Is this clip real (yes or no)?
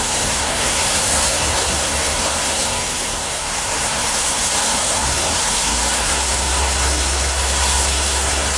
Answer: no